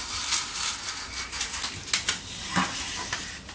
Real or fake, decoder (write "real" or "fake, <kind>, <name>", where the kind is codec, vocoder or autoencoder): real